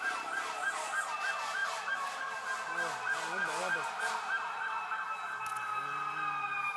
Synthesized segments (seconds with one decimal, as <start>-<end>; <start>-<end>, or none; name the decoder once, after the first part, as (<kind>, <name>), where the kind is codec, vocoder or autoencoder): 1.6-2.2 (vocoder, BigVGAN v2); 3.6-5.4